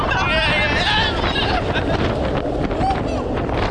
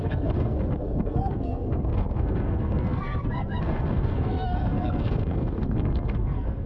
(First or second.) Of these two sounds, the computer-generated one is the second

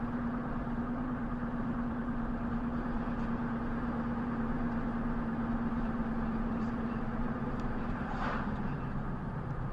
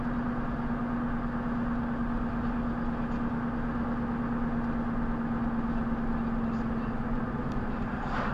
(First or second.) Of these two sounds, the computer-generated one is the first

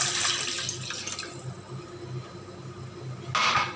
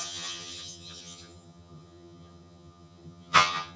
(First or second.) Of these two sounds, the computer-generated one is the second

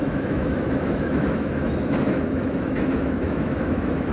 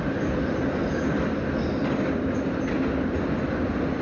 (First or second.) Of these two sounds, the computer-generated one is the first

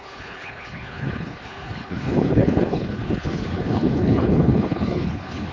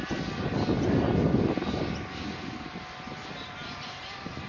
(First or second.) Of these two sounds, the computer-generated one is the first